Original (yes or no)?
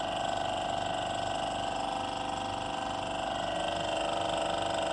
yes